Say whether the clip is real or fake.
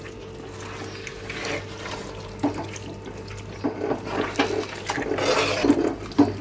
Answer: real